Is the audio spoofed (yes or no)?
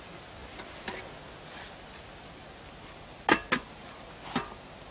no